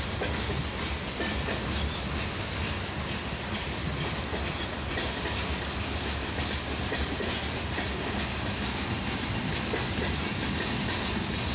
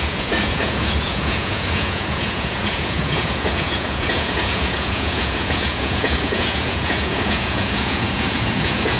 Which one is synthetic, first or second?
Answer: second